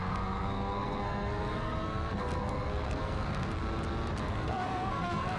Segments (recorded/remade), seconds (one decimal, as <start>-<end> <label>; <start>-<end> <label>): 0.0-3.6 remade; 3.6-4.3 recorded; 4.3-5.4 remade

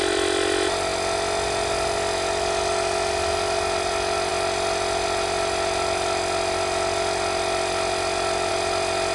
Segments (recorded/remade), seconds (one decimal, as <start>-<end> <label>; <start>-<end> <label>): 0.0-9.1 recorded

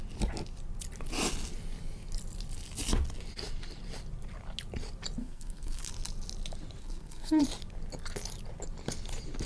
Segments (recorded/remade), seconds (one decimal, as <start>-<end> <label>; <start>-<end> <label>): 0.0-5.2 recorded; 5.2-5.9 remade; 5.9-6.8 recorded; 6.8-7.4 remade; 7.4-9.5 recorded

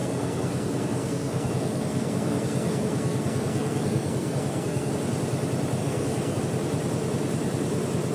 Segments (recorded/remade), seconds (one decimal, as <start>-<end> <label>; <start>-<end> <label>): 0.0-4.9 remade; 4.9-5.8 recorded; 5.8-6.4 remade; 6.4-8.1 recorded